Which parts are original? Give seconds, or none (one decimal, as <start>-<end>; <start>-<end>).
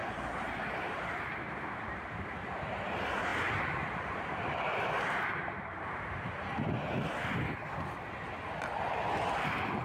2.9-3.3; 6.2-9.8